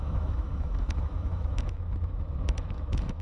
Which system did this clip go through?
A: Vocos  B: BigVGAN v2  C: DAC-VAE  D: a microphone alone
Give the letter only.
C